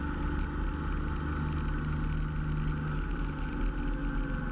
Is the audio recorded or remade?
recorded